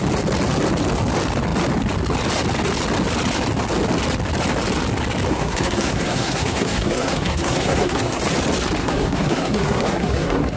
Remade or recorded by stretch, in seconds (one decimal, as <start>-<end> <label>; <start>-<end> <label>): 0.0-5.3 recorded; 5.3-8.2 remade; 8.2-8.8 recorded; 8.8-10.6 remade